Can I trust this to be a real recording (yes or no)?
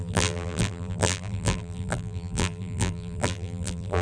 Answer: no